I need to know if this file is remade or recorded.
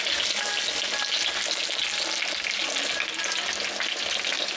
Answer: recorded